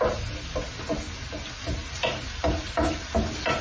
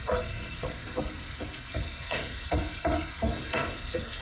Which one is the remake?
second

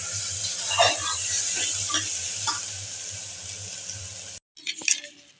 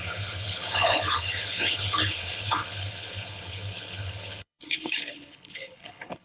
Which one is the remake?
second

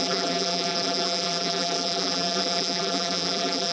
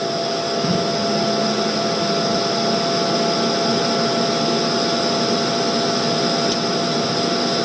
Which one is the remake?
first